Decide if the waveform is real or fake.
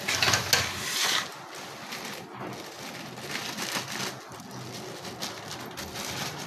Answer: real